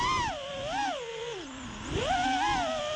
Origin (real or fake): real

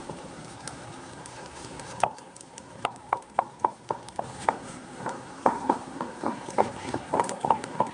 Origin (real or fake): fake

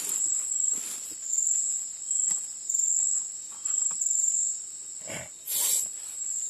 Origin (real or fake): real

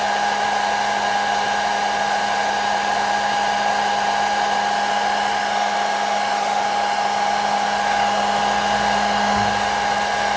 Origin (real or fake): real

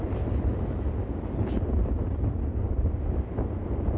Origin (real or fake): real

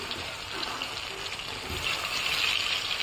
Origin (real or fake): real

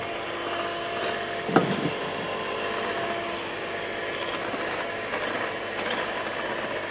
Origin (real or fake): real